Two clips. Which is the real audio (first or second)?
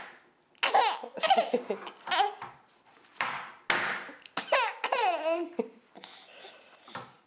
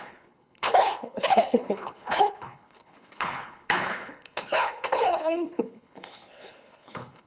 first